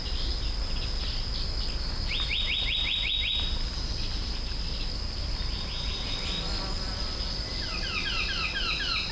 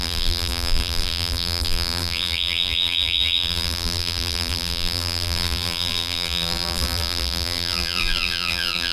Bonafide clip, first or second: first